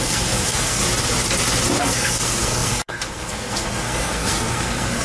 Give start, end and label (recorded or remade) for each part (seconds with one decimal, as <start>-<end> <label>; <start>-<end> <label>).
0.0-0.8 remade; 0.8-1.8 recorded; 1.8-5.0 remade